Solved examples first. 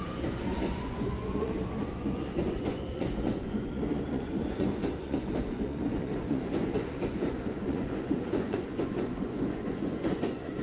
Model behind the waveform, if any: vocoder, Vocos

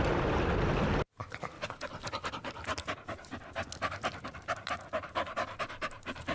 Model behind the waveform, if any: none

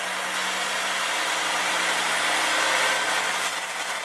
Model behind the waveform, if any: none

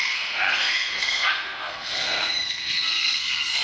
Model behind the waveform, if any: codec, SNAC